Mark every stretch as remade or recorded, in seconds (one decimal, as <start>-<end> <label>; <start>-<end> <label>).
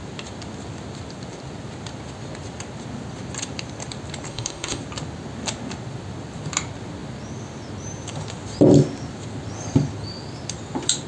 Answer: 0.0-4.3 recorded; 4.3-4.8 remade; 4.8-11.1 recorded